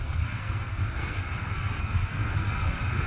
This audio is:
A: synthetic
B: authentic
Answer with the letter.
A